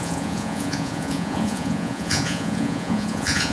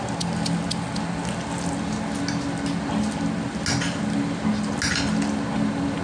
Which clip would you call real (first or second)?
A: second